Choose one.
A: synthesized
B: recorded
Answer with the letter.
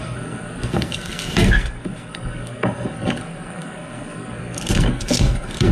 A